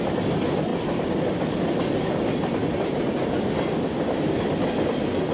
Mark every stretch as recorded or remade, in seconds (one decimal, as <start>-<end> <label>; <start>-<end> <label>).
0.0-5.3 recorded